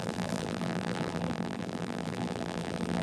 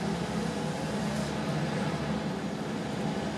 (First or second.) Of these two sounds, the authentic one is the second